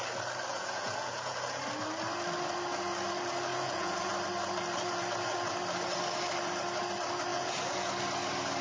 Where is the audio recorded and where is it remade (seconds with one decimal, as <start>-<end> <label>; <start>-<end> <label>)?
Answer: 0.0-0.5 recorded; 0.5-1.6 remade; 1.6-3.5 recorded; 3.5-4.1 remade; 4.1-7.3 recorded; 7.3-7.9 remade; 7.9-8.6 recorded